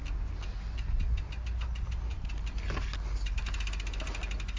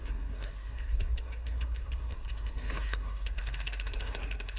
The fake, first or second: second